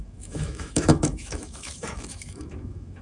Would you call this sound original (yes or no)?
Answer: no